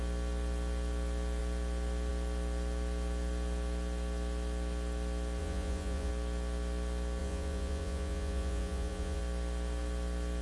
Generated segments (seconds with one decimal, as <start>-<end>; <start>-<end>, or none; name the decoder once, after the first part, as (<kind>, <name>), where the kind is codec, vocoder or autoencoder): 5.4-6.1 (vocoder, Vocos); 7.2-9.2